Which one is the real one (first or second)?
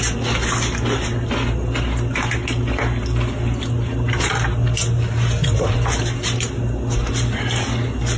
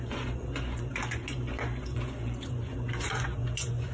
first